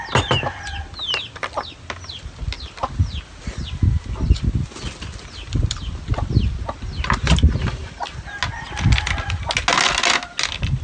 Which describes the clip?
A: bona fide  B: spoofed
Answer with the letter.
A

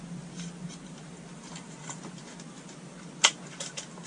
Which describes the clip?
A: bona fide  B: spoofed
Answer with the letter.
A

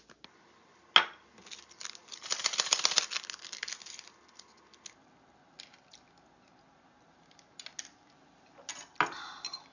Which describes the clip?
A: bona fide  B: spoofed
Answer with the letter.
A